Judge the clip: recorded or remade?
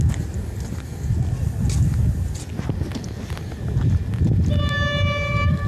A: recorded